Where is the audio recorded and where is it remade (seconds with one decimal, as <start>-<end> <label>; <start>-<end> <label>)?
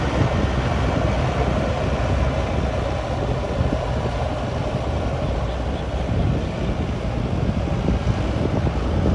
0.0-9.1 recorded